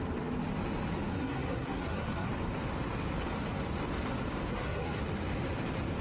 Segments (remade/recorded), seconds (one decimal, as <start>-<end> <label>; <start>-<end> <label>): 0.0-1.1 recorded; 1.1-2.3 remade; 2.3-4.5 recorded; 4.5-5.0 remade; 5.0-6.0 recorded